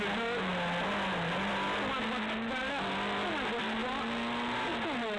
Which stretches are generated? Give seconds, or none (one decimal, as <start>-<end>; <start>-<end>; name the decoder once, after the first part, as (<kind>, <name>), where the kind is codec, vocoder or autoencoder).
none